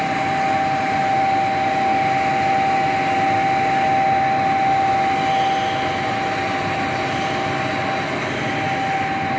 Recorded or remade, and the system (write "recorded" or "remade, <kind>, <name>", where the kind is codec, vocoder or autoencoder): recorded